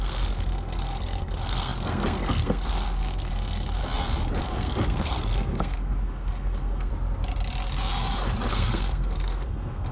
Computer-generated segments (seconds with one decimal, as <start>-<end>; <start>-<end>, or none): 0.0-3.8; 4.4-6.9; 8.5-9.9